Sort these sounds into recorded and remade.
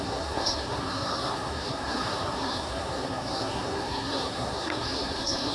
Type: remade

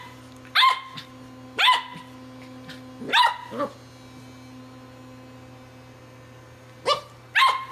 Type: recorded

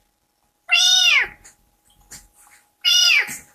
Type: recorded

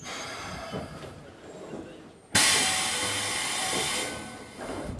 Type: recorded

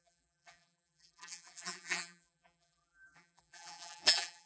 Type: remade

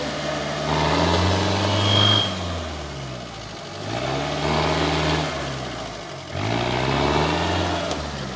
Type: recorded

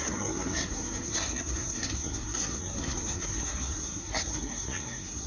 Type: remade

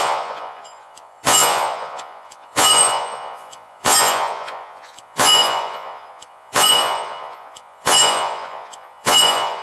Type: remade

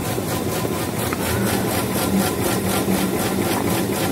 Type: remade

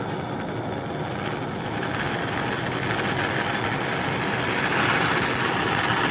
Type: recorded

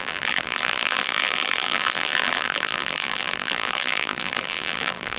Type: remade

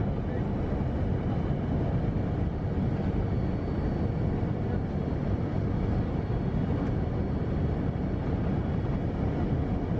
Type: recorded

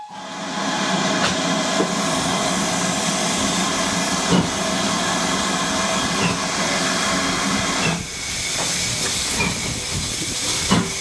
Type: recorded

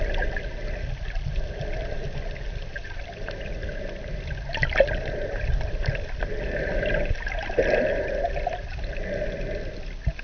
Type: recorded